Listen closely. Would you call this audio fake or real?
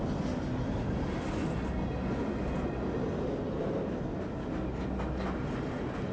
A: real